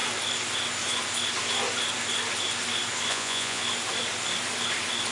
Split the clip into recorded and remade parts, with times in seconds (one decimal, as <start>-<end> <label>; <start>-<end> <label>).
0.0-3.1 recorded; 3.1-3.6 remade; 3.6-5.1 recorded